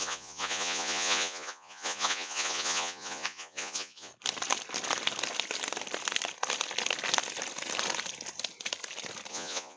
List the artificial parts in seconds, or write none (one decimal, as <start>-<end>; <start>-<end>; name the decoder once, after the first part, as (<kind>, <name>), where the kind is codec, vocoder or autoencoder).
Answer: 0.0-4.1 (vocoder, Vocos); 9.3-9.8